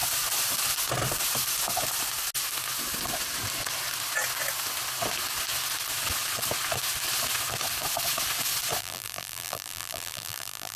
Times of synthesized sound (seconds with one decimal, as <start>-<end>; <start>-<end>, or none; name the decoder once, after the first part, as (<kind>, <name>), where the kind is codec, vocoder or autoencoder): 8.8-10.8 (vocoder, BigVGAN v2)